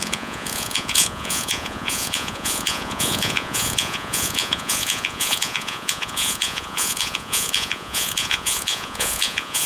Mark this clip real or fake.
fake